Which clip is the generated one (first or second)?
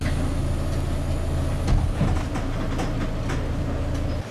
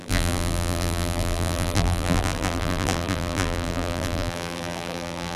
second